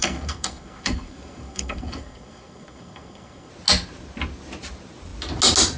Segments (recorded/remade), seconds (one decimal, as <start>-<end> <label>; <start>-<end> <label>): 0.0-3.5 remade; 3.5-5.8 recorded